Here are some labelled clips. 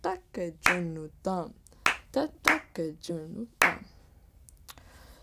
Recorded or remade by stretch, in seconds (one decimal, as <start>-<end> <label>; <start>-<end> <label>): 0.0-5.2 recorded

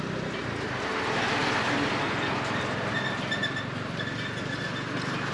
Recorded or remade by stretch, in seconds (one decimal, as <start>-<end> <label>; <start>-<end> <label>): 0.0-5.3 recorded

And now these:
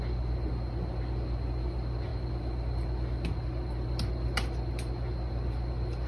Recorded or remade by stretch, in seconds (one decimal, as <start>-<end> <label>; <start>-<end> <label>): 0.0-6.1 recorded

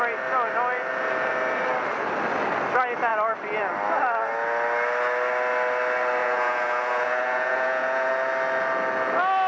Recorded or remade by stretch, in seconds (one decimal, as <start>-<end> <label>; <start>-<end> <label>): 0.0-6.2 recorded; 6.2-8.1 remade; 8.1-9.5 recorded